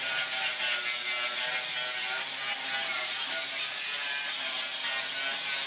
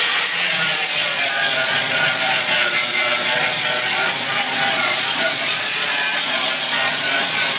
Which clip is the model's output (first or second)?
second